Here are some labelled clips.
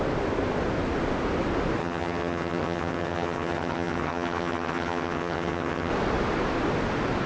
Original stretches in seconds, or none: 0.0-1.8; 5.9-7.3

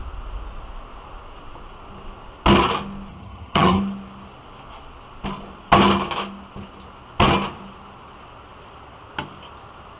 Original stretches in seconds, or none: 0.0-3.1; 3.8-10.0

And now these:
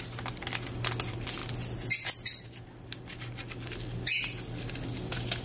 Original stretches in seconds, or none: 0.0-5.4

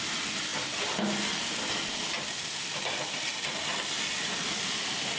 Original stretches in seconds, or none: 0.0-5.2

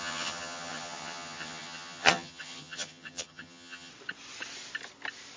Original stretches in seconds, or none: 3.9-5.4

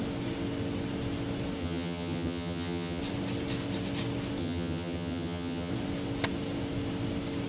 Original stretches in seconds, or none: 0.0-1.6; 3.0-4.4; 5.7-7.5

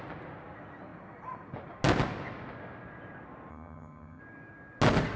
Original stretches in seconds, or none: 0.0-3.5; 4.2-5.2